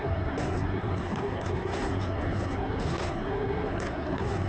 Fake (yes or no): yes